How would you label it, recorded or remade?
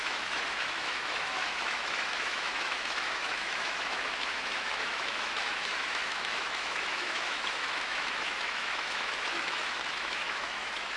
remade